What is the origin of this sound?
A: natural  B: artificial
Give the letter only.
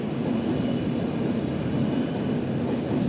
A